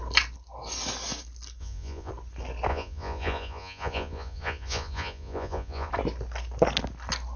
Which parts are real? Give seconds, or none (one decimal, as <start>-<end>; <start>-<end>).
0.0-1.6; 2.1-2.7; 5.9-7.4